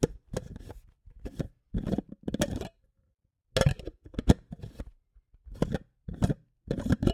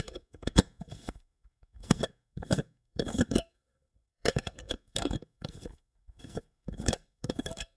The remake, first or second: second